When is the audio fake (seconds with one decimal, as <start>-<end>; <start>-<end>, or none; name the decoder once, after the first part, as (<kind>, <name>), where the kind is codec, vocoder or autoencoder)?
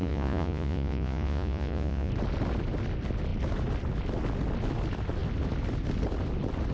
0.0-2.1 (vocoder, Vocos)